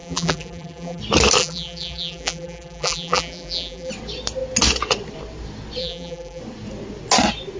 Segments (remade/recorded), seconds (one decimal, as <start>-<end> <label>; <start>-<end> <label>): 0.0-1.0 remade; 1.0-1.4 recorded; 1.4-3.9 remade; 3.9-5.8 recorded; 5.8-6.4 remade; 6.4-7.6 recorded